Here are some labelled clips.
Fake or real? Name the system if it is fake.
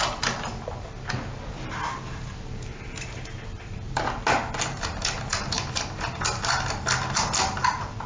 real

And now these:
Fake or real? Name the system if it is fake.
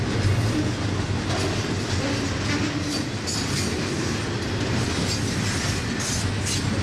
real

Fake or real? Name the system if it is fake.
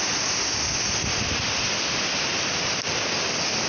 real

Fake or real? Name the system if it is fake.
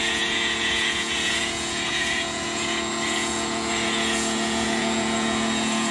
fake, vocoder, Vocos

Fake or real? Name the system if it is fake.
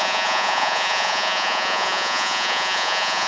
fake, vocoder, Vocos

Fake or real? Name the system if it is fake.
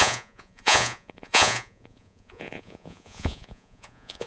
fake, vocoder, Vocos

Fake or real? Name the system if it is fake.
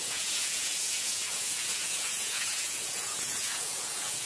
fake, vocoder, Vocos